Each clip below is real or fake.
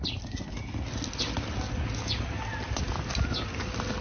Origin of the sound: real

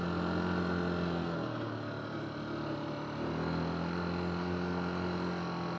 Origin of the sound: real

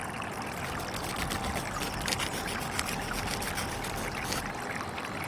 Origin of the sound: real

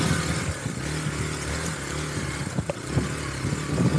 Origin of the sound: real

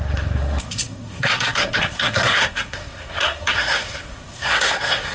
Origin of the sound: fake